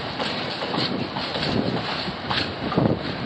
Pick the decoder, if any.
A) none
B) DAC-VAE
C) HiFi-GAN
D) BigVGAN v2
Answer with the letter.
D